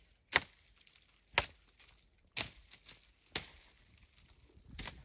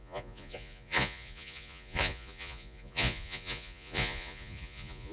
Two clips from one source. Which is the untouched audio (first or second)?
first